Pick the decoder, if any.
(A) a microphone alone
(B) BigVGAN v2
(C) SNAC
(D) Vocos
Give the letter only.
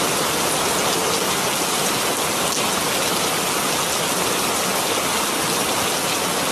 A